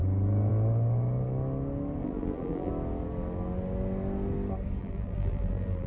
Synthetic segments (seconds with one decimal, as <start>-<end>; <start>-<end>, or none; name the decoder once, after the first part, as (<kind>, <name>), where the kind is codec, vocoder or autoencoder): 2.0-2.7 (vocoder, BigVGAN v2); 4.8-5.9